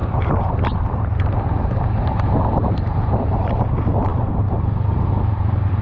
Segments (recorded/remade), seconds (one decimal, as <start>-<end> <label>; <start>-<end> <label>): 0.0-5.8 remade